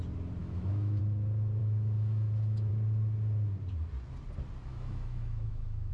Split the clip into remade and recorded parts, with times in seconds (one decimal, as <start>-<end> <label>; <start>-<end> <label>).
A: 0.0-0.4 recorded; 0.4-1.0 remade; 1.0-1.6 recorded; 1.6-2.7 remade; 2.7-4.7 recorded; 4.7-5.9 remade